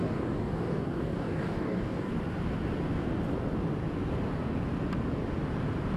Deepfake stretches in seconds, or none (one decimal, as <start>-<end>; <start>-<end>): 0.0-2.1